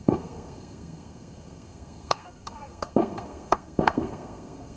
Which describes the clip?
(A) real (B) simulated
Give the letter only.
B